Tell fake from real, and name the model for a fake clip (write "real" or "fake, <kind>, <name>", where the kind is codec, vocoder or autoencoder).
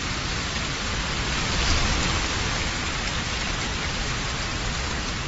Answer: real